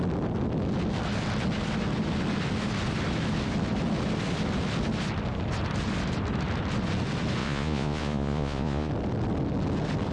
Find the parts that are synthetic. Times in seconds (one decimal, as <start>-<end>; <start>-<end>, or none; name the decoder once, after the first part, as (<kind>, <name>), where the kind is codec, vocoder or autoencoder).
7.4-8.9 (vocoder, Vocos)